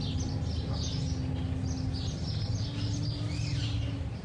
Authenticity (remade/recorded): recorded